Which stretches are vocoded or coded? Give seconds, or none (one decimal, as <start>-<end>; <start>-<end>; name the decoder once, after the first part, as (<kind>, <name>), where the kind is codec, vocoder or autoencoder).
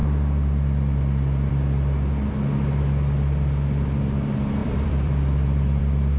0.0-1.5 (vocoder, BigVGAN v2); 4.6-5.8